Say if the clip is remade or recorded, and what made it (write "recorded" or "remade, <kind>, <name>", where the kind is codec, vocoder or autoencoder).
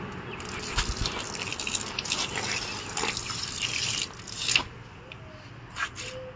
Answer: recorded